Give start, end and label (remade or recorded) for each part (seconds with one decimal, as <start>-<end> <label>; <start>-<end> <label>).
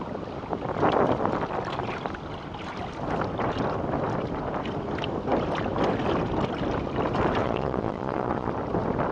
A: 0.0-7.4 recorded; 7.4-8.5 remade; 8.5-9.1 recorded